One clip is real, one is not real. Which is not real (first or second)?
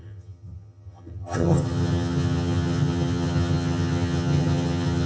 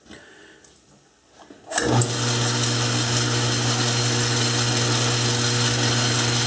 first